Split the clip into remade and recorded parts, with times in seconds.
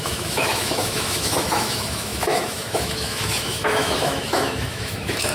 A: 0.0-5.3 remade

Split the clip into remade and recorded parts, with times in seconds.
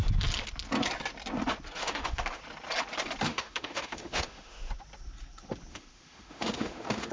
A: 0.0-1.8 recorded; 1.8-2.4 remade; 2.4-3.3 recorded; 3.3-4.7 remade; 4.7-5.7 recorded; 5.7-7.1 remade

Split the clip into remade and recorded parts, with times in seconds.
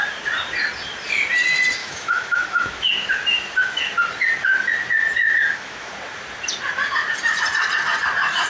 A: 0.0-1.8 recorded; 1.8-3.8 remade; 3.8-5.1 recorded; 5.1-5.9 remade; 5.9-8.5 recorded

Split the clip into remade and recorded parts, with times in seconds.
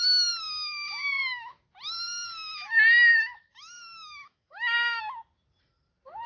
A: 0.0-1.2 recorded; 1.2-1.7 remade; 1.7-3.1 recorded; 3.1-5.0 remade; 5.0-6.3 recorded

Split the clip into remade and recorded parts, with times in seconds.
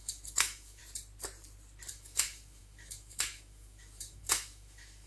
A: 0.0-0.8 remade; 0.8-1.9 recorded; 1.9-5.1 remade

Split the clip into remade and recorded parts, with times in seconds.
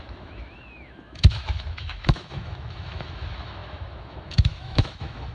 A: 0.0-5.3 remade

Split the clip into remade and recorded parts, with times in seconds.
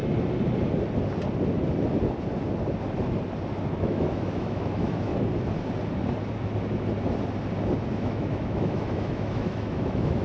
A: 0.0-3.8 recorded; 3.8-5.1 remade; 5.1-7.9 recorded; 7.9-10.2 remade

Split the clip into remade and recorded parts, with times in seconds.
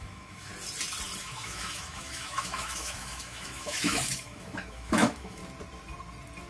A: 0.0-0.5 remade; 0.5-1.2 recorded; 1.2-5.4 remade; 5.4-6.5 recorded